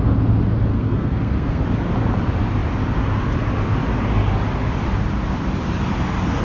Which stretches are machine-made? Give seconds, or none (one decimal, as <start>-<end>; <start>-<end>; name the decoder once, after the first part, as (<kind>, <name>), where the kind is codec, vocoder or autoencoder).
0.7-1.6 (codec, SNAC)